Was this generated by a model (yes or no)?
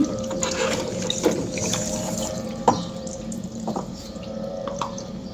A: yes